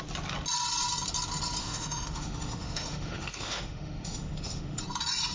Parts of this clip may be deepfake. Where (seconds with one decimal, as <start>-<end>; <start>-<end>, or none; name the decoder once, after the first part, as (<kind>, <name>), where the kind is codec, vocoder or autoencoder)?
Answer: 1.6-4.8 (autoencoder, DAC-VAE)